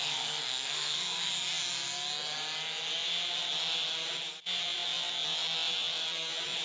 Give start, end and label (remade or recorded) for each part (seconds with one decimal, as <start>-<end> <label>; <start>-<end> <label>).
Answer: 0.0-1.3 remade; 1.3-6.6 recorded

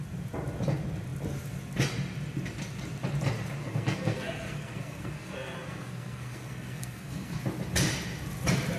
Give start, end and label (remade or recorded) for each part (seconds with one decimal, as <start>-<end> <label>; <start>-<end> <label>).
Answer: 0.0-3.6 recorded; 3.6-7.4 remade; 7.4-8.8 recorded

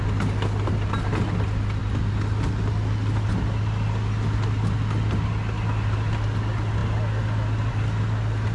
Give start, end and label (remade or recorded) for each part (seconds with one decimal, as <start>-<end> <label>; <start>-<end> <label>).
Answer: 0.0-8.5 recorded

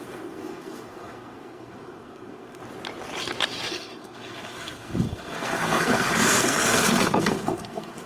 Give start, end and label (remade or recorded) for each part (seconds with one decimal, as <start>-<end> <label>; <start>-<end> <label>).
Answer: 0.0-2.6 remade; 2.6-3.7 recorded; 3.7-8.1 remade

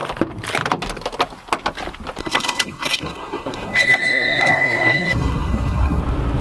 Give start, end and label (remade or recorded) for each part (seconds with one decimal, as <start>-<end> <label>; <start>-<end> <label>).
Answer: 0.0-2.2 recorded; 2.2-6.0 remade; 6.0-6.4 recorded

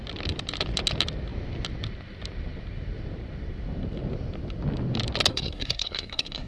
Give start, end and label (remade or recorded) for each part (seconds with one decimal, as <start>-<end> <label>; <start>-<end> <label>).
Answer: 0.0-5.3 recorded; 5.3-6.5 remade